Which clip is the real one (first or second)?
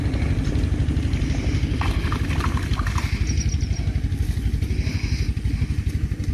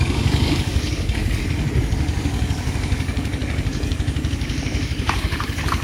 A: first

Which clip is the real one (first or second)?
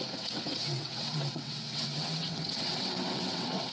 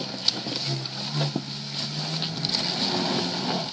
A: second